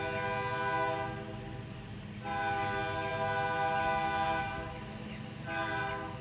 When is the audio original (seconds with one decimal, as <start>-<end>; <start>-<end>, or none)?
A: 0.0-6.2